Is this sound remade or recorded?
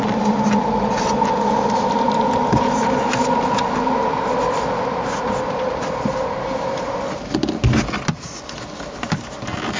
recorded